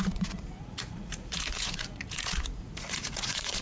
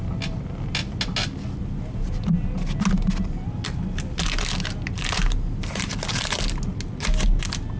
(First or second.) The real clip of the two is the second